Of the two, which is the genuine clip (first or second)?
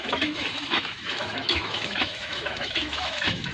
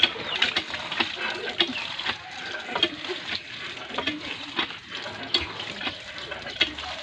second